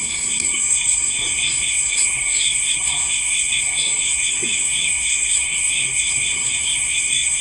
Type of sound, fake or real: fake